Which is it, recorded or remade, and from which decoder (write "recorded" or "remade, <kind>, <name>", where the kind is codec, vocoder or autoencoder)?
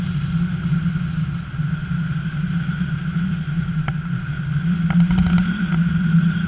recorded